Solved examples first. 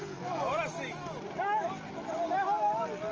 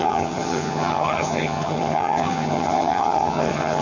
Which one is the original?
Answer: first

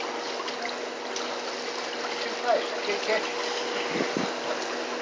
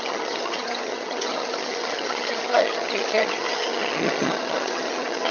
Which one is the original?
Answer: first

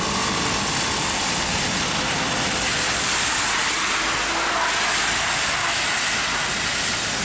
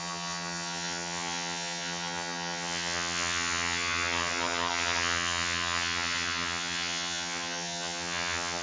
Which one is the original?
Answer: first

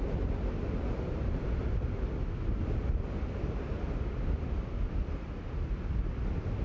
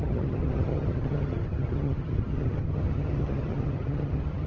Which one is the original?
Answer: first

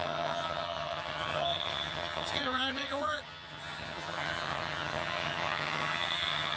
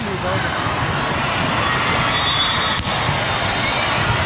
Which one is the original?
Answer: second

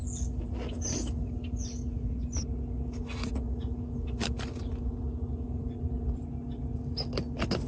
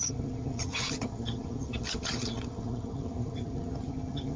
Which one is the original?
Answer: first